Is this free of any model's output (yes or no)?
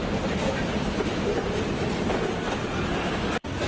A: yes